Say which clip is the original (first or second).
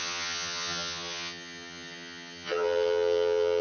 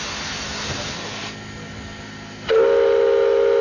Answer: second